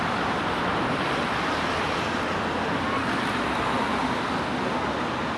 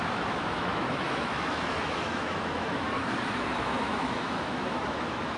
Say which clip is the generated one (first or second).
second